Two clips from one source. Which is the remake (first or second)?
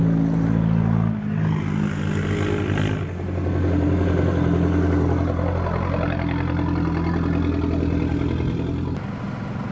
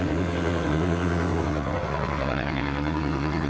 second